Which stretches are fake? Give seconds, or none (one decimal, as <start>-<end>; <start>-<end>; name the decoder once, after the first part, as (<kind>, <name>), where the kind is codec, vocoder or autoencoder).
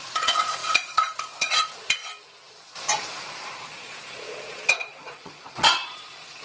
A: 0.0-2.0 (vocoder, Vocos); 2.5-6.4